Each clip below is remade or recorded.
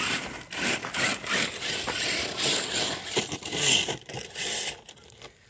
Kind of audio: recorded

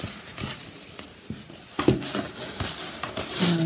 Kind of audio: remade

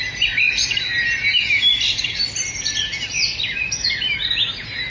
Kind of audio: recorded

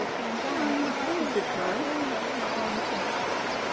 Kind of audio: remade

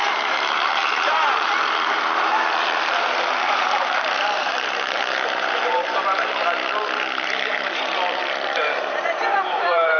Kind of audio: remade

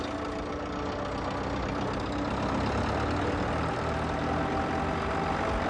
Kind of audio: recorded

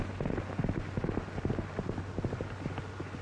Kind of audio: recorded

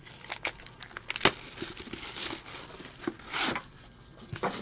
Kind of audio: recorded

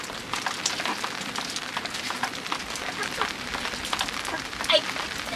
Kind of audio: recorded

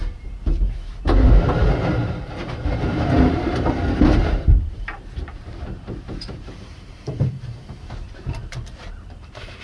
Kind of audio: remade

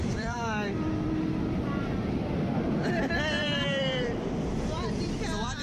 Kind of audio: remade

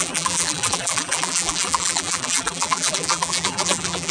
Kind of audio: remade